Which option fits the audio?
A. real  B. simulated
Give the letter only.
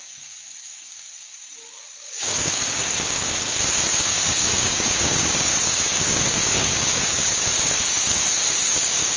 B